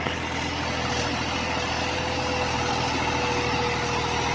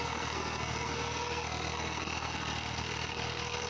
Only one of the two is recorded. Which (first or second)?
first